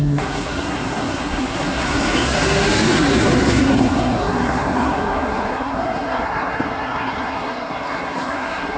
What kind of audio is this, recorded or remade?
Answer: remade